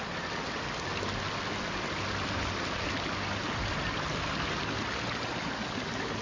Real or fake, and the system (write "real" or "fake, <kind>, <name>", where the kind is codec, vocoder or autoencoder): real